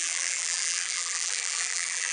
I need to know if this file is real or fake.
fake